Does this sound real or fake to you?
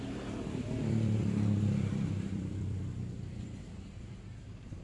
fake